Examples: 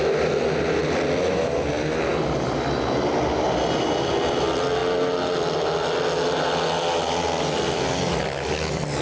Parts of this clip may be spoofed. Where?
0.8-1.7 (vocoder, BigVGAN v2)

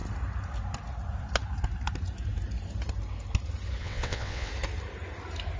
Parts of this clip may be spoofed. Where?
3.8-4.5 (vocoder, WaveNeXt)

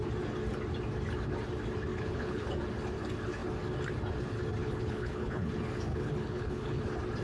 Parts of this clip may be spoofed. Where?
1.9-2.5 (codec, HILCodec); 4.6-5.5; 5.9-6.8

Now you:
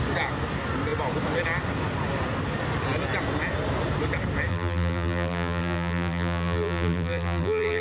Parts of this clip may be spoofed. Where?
4.5-7.8 (vocoder, BigVGAN v2)

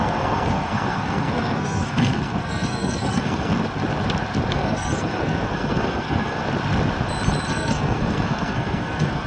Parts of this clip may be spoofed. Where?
0.0-3.5 (codec, SNAC); 4.5-6.4; 7.5-9.3

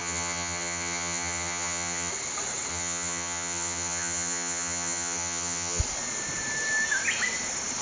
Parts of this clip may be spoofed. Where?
0.0-2.1 (vocoder, HiFi-GAN); 2.7-5.8

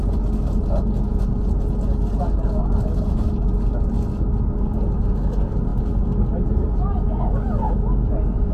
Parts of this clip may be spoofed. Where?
none

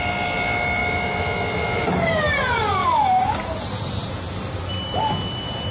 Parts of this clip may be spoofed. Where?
none